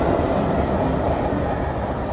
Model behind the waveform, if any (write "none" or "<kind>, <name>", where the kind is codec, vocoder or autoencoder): none